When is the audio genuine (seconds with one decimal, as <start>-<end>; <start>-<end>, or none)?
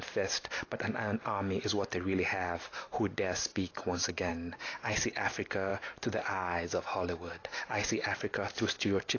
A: 0.0-3.5; 4.3-9.2